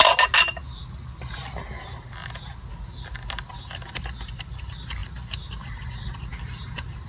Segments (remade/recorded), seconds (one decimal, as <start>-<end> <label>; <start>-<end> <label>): 0.0-7.1 recorded